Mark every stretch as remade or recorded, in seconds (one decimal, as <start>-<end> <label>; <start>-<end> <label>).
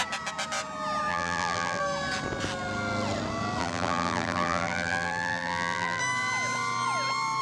0.0-1.1 recorded; 1.1-1.8 remade; 1.8-3.6 recorded; 3.6-6.0 remade; 6.0-7.4 recorded